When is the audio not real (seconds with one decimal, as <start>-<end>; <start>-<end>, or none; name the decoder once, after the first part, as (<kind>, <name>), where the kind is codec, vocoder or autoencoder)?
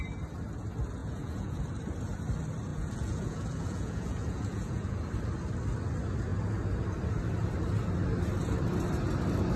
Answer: 1.0-1.6 (vocoder, Vocos); 2.7-5.1